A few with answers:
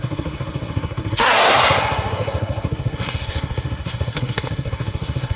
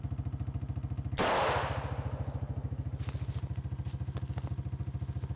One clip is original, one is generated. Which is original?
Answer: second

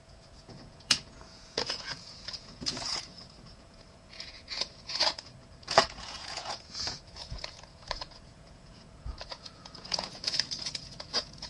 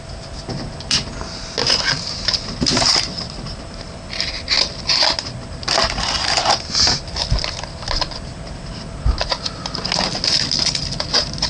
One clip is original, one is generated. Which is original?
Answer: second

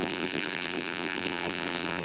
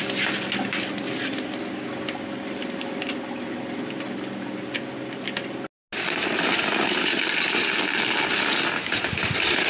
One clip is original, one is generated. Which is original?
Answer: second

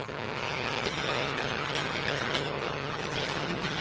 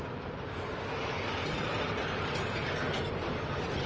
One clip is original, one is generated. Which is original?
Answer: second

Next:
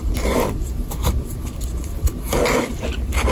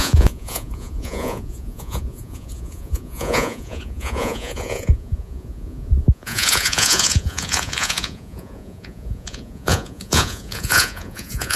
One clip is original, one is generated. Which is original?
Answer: first